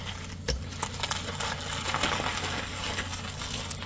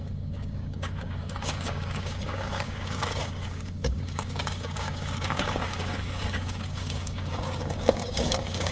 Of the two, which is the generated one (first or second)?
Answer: second